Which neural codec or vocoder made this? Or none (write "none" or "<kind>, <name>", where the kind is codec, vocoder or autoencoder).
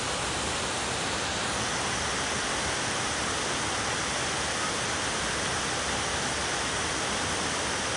none